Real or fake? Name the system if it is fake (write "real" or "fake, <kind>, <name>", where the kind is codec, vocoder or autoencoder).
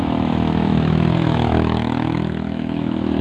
fake, autoencoder, DAC-VAE